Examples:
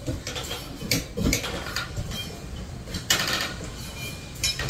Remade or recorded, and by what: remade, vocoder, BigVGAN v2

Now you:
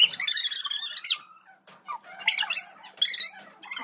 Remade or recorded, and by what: recorded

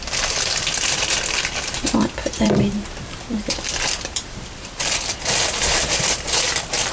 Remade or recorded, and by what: remade, vocoder, BigVGAN v2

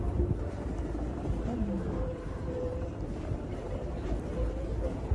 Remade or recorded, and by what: remade, vocoder, BigVGAN v2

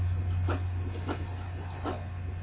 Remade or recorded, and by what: recorded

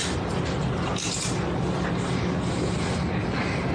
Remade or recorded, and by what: recorded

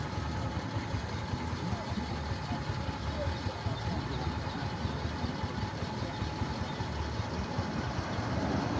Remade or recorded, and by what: recorded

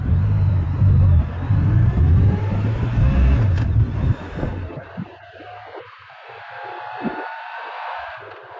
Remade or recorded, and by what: remade, vocoder, BigVGAN v2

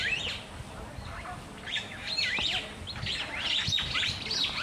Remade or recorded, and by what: recorded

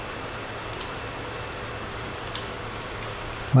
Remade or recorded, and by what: recorded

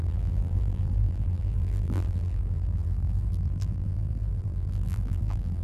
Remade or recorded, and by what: remade, vocoder, BigVGAN v2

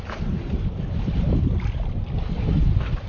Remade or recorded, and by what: remade, vocoder, BigVGAN v2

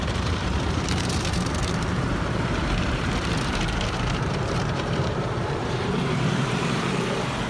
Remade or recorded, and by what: remade, vocoder, BigVGAN v2